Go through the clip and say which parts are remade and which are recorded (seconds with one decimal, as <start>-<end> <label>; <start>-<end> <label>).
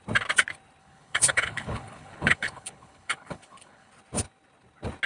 0.0-0.8 recorded; 0.8-3.9 remade; 3.9-5.1 recorded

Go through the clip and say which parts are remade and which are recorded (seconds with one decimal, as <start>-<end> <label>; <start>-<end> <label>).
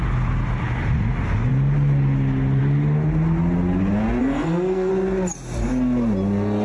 0.0-4.2 recorded; 4.2-4.9 remade; 4.9-6.6 recorded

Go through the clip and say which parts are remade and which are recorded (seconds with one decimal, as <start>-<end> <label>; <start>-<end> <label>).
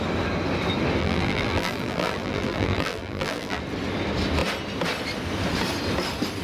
0.0-1.0 recorded; 1.0-3.6 remade; 3.6-6.4 recorded